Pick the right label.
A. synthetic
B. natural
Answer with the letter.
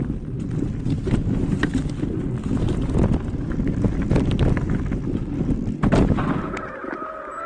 B